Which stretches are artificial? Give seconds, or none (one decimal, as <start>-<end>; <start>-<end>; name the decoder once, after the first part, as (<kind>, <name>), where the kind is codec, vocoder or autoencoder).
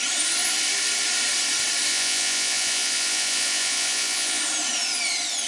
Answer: 1.9-4.4 (vocoder, Vocos)